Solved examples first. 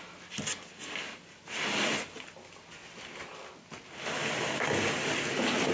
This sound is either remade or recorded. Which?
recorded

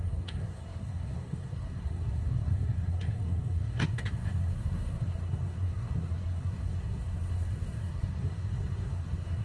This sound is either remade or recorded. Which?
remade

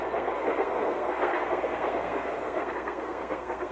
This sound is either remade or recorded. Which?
remade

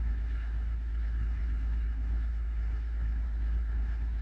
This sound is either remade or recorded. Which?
remade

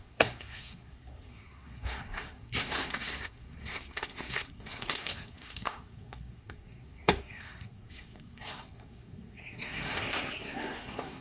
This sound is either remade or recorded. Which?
remade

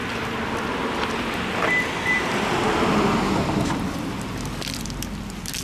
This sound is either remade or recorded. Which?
recorded